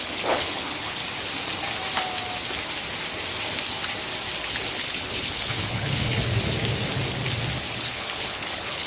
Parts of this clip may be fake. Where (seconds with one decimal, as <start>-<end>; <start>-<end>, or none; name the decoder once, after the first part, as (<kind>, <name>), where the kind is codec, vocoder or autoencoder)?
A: 0.0-1.0 (codec, HILCodec); 4.5-6.3; 7.7-8.9